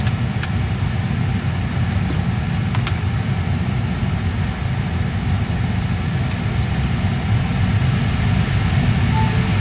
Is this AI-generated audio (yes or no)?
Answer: no